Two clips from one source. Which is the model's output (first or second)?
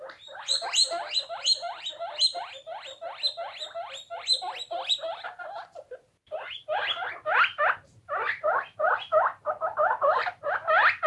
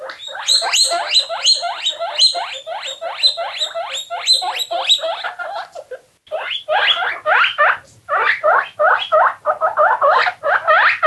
first